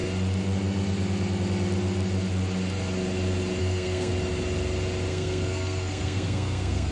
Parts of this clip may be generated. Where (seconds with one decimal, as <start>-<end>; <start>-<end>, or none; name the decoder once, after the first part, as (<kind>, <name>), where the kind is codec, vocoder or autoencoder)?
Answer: 3.6-4.1 (codec, SNAC); 5.1-6.9

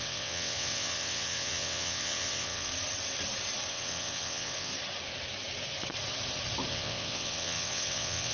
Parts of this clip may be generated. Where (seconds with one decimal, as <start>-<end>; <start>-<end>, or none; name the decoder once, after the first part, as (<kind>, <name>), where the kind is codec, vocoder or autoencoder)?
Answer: 0.0-2.7 (vocoder, WaveNeXt); 3.7-4.7; 6.7-8.3

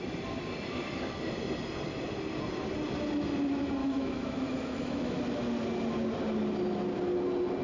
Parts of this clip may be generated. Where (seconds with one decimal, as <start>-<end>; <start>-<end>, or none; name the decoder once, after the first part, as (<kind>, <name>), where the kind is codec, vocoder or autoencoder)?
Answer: 3.8-5.2 (autoencoder, DAC-VAE)

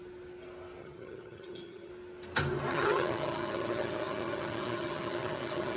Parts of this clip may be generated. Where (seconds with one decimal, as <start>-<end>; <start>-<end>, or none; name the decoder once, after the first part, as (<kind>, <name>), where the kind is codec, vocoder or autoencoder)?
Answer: 0.8-1.9 (vocoder, HiFi-GAN); 2.7-5.8

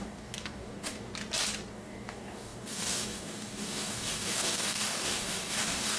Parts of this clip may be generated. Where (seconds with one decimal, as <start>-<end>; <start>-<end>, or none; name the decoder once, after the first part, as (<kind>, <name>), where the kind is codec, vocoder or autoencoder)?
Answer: 0.0-1.1 (codec, DAC); 1.7-6.0